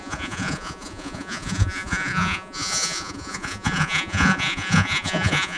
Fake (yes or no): yes